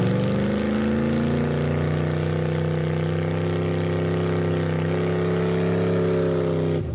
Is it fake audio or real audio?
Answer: real